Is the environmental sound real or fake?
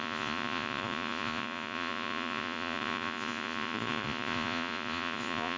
fake